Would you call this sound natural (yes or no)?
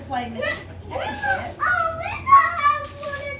yes